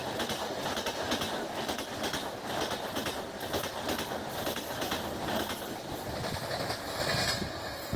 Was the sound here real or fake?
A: real